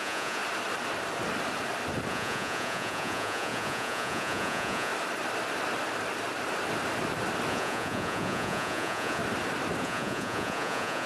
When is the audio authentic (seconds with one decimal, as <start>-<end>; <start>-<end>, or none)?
0.4-2.1; 4.9-7.5; 9.2-9.8